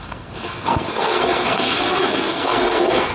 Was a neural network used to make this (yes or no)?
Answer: yes